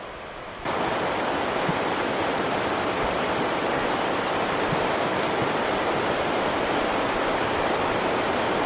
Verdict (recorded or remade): recorded